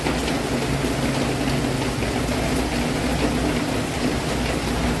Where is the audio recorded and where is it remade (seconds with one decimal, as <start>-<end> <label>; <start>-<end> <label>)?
0.0-5.0 recorded